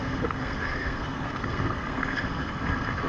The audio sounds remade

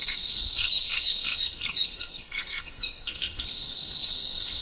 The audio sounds remade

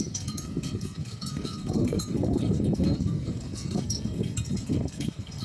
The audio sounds remade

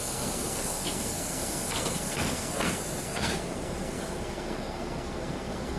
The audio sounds remade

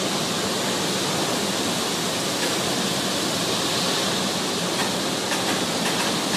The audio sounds recorded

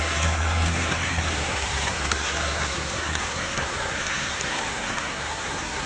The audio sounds remade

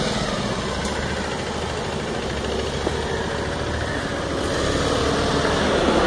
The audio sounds recorded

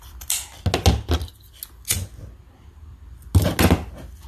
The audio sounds recorded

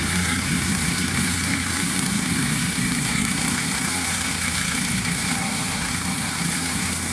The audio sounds remade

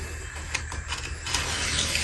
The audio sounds recorded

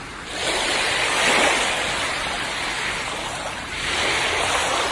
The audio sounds recorded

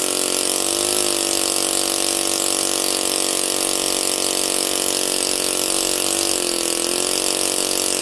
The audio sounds recorded